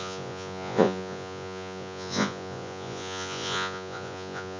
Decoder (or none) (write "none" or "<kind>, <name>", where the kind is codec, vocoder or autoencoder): vocoder, Vocos